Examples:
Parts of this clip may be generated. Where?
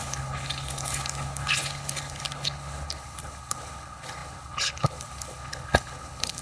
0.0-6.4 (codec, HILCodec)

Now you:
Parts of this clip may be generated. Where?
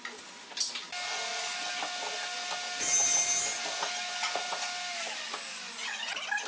5.5-6.1 (vocoder, Vocos)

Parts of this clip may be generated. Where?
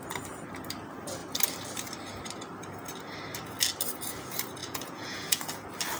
4.6-5.4 (vocoder, Vocos)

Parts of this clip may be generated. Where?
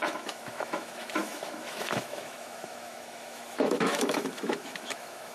0.0-5.3 (autoencoder, DAC-VAE)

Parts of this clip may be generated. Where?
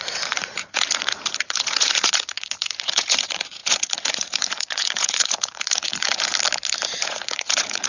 0.0-6.3 (vocoder, Vocos); 6.9-7.9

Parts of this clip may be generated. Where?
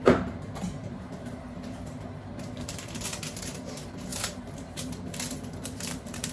0.0-2.2 (vocoder, BigVGAN v2); 3.4-6.3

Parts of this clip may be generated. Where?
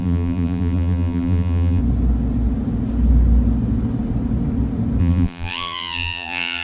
0.0-1.8 (vocoder, BigVGAN v2); 5.0-6.6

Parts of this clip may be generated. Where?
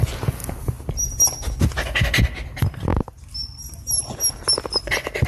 none